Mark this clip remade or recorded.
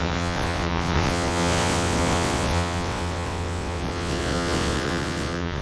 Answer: remade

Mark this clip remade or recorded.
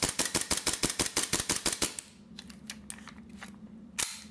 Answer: recorded